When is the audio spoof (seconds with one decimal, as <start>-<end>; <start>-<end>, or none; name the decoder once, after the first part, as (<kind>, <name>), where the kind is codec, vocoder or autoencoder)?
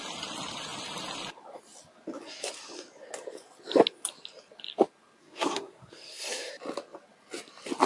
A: 5.2-6.5 (codec, SNAC)